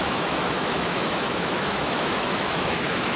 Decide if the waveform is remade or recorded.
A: remade